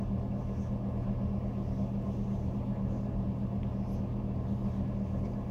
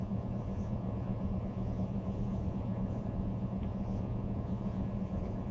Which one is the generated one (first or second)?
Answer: second